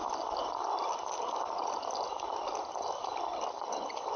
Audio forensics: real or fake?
real